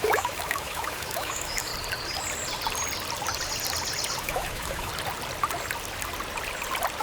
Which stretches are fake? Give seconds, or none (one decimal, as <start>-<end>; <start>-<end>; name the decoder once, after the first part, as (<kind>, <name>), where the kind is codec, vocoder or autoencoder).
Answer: 0.0-1.7 (autoencoder, DAC-VAE); 4.2-4.9